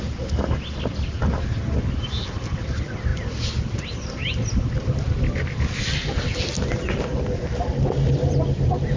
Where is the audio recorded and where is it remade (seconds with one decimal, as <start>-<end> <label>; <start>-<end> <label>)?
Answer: 0.0-9.0 recorded